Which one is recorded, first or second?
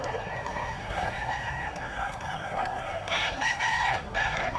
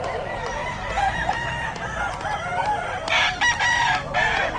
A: second